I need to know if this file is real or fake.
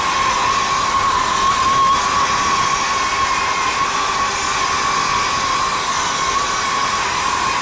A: real